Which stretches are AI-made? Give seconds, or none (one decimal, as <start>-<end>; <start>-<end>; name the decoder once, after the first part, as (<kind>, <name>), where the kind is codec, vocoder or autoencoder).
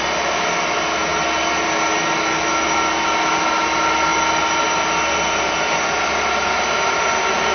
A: none